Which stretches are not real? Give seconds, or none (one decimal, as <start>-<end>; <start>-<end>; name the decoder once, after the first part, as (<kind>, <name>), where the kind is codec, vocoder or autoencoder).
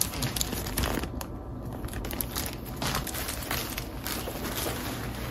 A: none